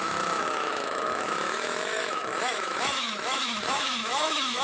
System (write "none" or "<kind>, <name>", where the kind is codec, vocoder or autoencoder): autoencoder, DAC-VAE